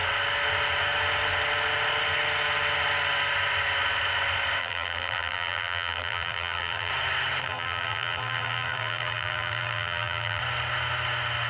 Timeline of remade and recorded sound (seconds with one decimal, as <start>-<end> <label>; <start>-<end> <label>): 0.0-4.6 recorded; 4.6-6.9 remade; 6.9-7.4 recorded; 7.4-10.4 remade; 10.4-11.5 recorded